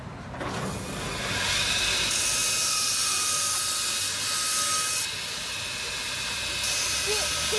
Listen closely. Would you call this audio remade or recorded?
recorded